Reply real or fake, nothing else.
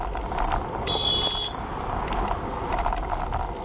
real